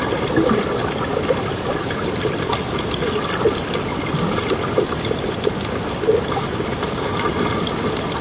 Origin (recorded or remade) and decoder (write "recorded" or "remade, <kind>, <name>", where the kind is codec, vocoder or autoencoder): recorded